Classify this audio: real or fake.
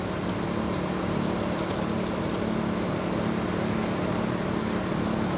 real